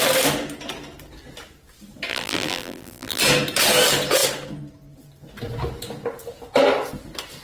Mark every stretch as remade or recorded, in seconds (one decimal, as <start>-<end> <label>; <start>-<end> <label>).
0.0-2.1 recorded; 2.1-3.2 remade; 3.2-7.4 recorded